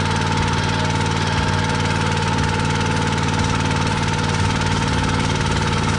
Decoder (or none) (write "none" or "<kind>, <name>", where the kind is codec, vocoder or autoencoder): none